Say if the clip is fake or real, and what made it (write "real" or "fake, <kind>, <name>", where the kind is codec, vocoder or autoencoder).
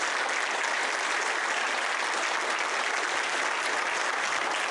real